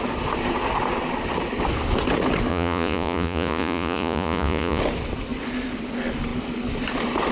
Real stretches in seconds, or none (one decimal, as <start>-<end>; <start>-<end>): 0.0-2.5; 4.8-7.3